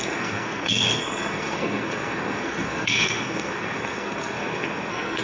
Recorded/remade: remade